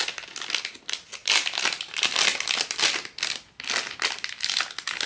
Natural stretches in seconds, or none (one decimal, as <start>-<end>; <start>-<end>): 0.0-5.1